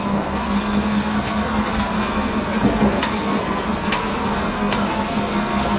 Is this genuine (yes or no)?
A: no